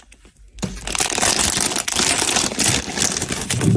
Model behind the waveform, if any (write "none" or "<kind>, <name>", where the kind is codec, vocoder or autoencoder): none